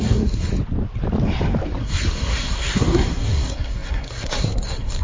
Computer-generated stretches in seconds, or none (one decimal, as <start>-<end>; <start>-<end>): 0.0-0.5; 1.8-5.0